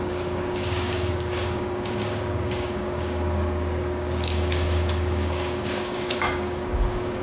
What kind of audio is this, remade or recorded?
remade